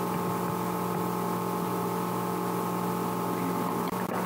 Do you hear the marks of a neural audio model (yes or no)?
no